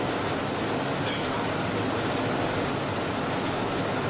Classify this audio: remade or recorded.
recorded